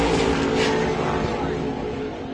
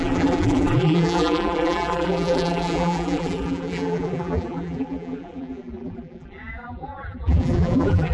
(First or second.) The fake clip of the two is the second